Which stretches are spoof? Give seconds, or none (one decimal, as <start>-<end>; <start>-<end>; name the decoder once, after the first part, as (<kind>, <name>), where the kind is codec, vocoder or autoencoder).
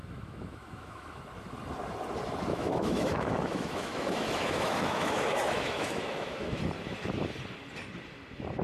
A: 0.0-1.2 (autoencoder, DAC-VAE); 2.5-6.6